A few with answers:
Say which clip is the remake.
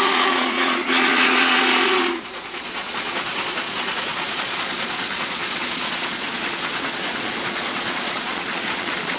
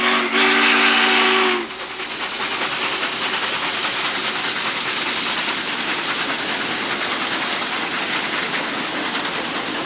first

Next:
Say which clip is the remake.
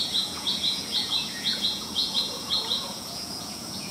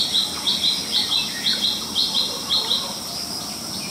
first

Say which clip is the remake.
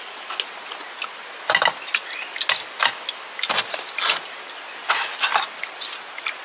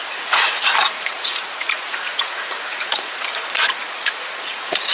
second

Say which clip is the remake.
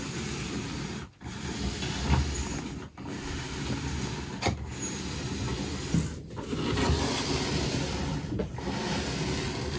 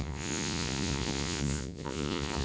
second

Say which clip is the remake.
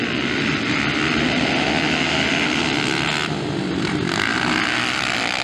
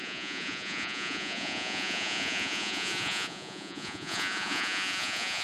second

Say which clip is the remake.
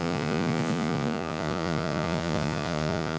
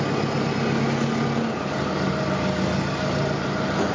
first